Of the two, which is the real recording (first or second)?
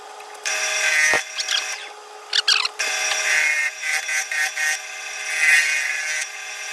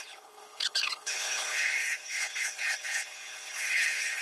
first